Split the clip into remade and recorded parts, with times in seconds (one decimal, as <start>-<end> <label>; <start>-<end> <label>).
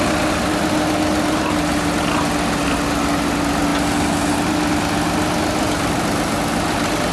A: 0.0-7.1 recorded